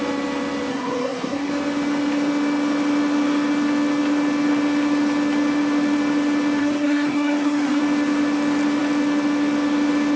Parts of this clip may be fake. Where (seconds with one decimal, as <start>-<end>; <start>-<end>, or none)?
0.7-1.5; 6.6-7.8